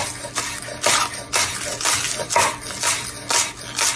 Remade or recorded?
recorded